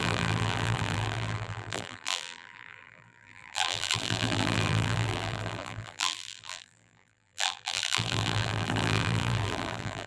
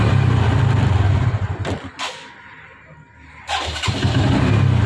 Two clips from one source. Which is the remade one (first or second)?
first